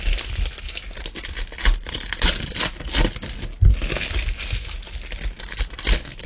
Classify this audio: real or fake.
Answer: real